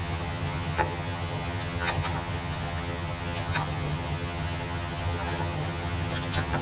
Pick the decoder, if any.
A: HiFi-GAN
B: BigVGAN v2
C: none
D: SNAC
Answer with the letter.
A